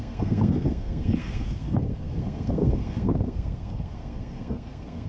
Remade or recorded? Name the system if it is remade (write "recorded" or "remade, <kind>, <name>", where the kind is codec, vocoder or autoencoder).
remade, codec, SNAC